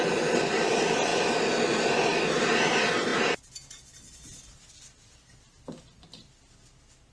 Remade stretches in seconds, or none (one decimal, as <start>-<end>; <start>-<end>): 3.1-3.8